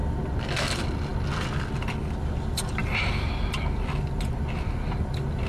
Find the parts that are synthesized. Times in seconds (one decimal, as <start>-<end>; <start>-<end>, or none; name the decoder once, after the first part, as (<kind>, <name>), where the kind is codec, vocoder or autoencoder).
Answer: none